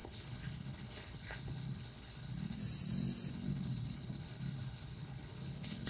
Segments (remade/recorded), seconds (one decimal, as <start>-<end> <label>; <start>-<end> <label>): 0.0-2.6 remade; 2.6-3.3 recorded; 3.3-5.9 remade